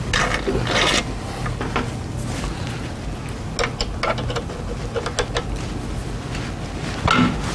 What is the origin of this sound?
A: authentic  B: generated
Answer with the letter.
A